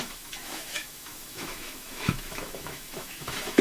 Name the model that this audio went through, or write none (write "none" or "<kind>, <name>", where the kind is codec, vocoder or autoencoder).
autoencoder, DAC-VAE